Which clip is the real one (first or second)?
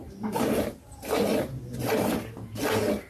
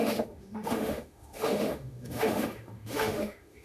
first